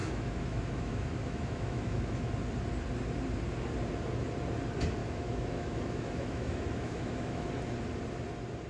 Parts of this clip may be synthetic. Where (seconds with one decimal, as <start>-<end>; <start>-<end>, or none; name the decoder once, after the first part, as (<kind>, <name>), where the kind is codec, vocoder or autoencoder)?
0.0-2.3 (autoencoder, DAC-VAE); 5.0-7.5